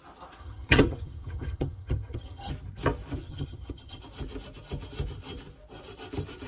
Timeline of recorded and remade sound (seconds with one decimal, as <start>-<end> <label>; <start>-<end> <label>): 0.0-0.4 recorded; 0.4-2.5 remade; 2.5-3.2 recorded; 3.2-4.0 remade; 4.0-6.5 recorded